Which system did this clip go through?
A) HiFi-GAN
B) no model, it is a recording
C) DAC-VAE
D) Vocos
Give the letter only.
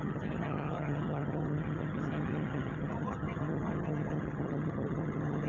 A